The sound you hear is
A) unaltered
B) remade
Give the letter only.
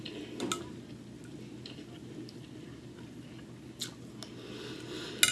A